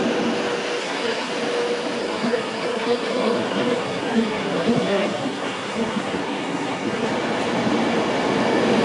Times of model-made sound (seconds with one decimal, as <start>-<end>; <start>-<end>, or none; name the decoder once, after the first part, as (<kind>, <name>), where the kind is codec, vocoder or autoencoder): 0.8-1.3 (codec, SNAC); 2.0-7.1